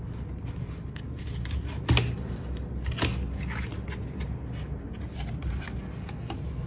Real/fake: real